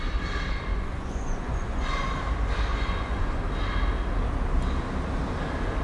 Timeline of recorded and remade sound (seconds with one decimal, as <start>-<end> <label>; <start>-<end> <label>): 0.0-0.7 recorded; 0.7-2.0 remade; 2.0-2.7 recorded; 2.7-3.4 remade; 3.4-5.8 recorded